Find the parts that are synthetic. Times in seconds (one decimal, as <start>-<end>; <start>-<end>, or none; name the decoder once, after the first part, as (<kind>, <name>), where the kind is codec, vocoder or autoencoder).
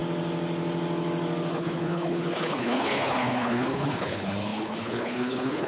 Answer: 1.5-5.7 (codec, HILCodec)